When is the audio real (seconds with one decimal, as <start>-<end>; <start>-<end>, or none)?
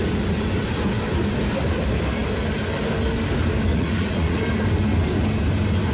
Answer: 0.0-3.7; 4.4-5.9